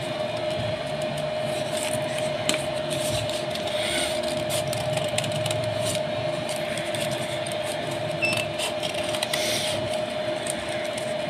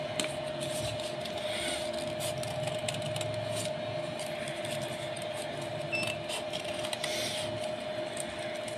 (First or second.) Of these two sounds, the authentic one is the second